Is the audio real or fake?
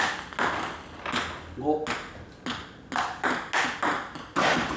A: real